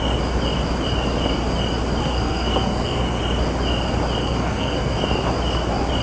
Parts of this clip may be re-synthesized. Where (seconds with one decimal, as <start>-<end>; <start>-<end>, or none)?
2.0-3.2; 4.2-5.0